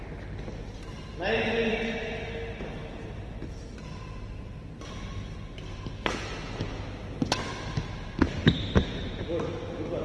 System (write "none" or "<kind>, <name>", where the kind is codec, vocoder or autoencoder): none